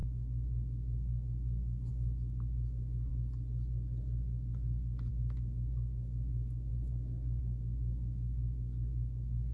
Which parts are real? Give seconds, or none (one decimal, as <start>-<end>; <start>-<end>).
3.1-5.1